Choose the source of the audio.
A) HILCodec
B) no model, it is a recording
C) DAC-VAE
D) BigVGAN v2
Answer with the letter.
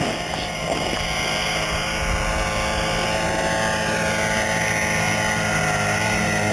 B